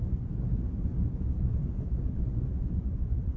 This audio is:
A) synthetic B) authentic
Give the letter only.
A